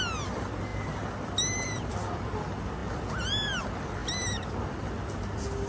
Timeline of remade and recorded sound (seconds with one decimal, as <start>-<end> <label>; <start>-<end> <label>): 0.0-5.7 recorded